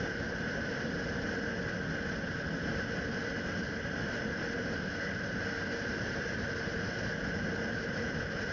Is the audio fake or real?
real